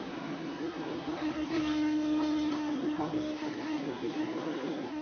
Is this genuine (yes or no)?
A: no